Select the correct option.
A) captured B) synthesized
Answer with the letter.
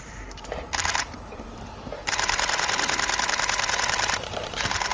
B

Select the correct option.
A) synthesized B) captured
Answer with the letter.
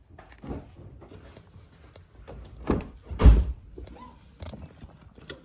A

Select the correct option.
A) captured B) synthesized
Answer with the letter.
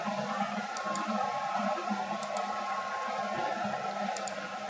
B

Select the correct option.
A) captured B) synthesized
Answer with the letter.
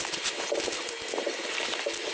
A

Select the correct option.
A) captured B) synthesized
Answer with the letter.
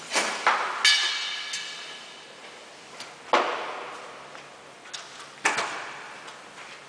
A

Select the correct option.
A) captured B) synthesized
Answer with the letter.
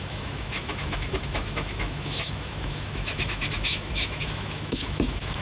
B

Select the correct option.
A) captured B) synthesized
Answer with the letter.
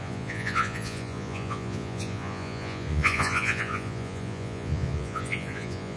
B